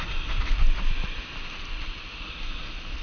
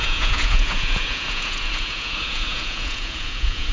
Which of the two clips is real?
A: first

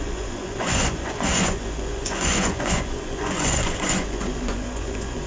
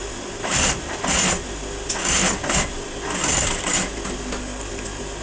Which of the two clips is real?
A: second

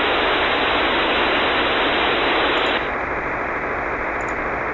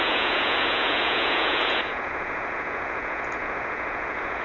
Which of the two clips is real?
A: first